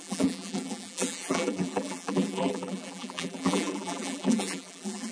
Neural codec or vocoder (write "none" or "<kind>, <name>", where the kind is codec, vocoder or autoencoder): vocoder, BigVGAN v2